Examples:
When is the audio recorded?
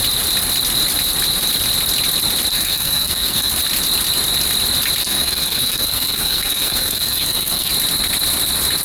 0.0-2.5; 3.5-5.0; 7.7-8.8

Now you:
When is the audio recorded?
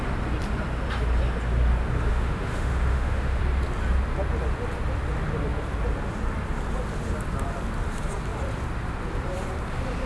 0.0-2.1; 3.4-10.1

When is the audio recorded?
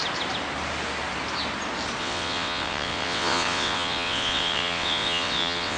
0.0-2.0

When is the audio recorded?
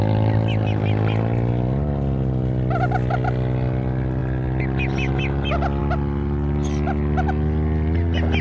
0.0-8.4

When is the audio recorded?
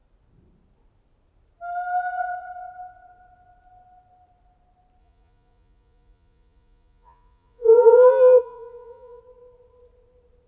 0.0-5.0; 9.2-10.5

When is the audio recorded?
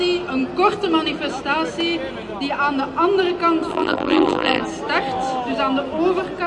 0.0-3.7; 4.6-6.5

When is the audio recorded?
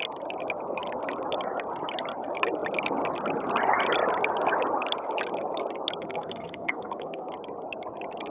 0.0-6.0; 7.3-8.3